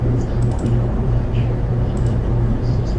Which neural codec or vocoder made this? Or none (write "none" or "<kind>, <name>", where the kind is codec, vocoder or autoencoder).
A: vocoder, BigVGAN v2